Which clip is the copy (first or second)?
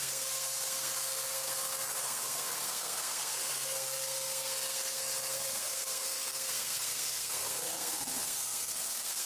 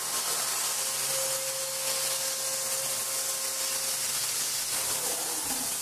first